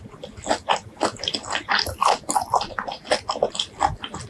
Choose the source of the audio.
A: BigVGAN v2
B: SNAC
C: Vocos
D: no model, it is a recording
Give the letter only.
D